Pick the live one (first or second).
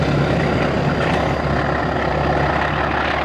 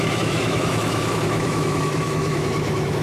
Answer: first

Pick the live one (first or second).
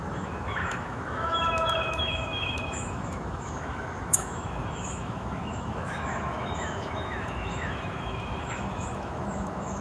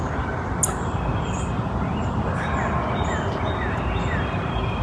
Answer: second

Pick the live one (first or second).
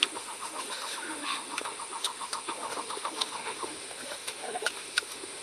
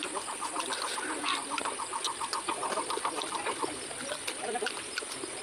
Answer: second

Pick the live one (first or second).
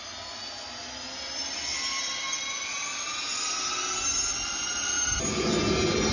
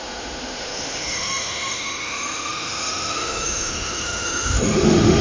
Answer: first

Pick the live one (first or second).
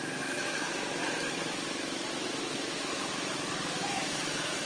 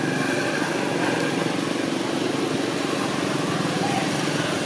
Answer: second